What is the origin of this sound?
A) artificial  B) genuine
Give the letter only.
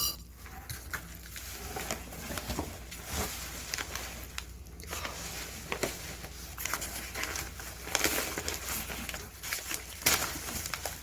B